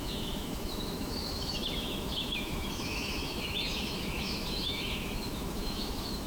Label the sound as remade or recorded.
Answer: remade